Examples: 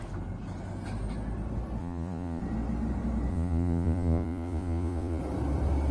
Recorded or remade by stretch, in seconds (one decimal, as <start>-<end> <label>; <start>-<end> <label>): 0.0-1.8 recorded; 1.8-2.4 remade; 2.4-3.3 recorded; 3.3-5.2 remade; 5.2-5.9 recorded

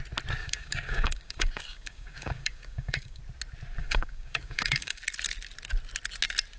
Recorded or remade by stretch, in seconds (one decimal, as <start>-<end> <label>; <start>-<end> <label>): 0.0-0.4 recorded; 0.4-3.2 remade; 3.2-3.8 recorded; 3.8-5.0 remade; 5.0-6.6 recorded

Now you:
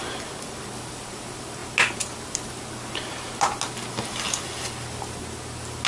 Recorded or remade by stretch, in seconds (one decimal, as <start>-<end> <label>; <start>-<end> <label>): 0.0-5.9 recorded